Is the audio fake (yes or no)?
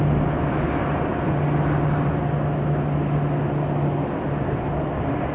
no